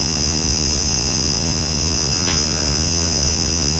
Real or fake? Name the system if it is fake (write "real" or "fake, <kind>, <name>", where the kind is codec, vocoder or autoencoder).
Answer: fake, vocoder, Vocos